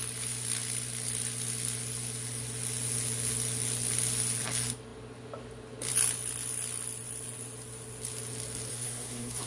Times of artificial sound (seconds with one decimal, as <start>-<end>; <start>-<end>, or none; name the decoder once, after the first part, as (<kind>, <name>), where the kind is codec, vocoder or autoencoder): 8.7-9.5 (codec, SNAC)